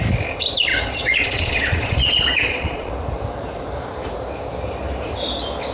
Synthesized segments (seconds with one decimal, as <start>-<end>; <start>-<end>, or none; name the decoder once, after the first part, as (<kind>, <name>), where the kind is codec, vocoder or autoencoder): 0.7-2.9 (vocoder, Vocos)